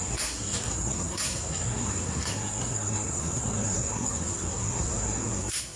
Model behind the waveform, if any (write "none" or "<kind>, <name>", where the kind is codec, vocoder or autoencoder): codec, SNAC